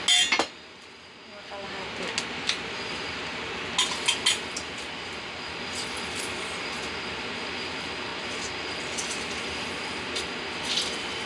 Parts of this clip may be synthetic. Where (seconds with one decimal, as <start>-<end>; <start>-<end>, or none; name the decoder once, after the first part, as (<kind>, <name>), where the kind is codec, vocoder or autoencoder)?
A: none